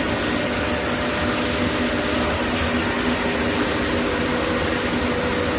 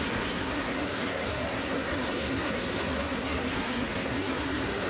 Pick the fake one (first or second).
second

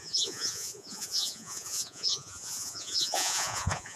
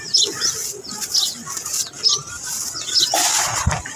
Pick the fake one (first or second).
first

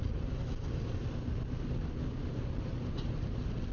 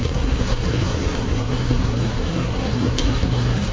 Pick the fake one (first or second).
second